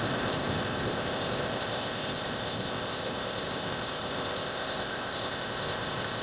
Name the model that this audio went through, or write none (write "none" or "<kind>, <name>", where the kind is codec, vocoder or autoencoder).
codec, ZipCodec